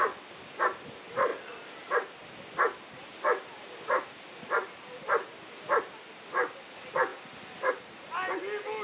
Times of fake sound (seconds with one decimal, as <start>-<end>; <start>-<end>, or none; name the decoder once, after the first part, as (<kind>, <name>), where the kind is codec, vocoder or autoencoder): 1.3-4.7 (vocoder, BigVGAN v2); 7.1-7.7